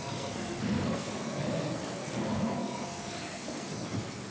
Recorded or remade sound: remade